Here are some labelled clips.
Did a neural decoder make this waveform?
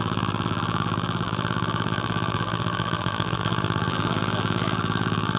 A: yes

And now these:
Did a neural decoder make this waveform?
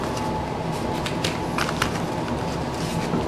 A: no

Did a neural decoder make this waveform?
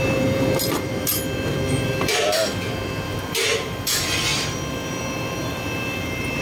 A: yes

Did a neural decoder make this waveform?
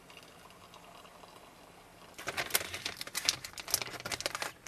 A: no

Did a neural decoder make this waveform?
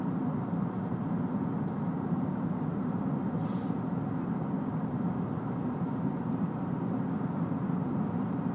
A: no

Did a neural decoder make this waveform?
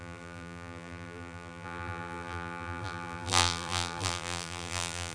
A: yes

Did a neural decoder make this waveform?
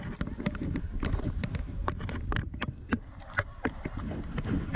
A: yes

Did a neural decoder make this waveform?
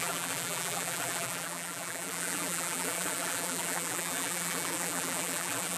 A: yes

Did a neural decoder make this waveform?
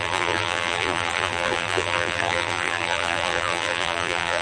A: yes